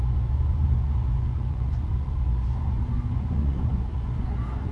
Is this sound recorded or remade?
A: remade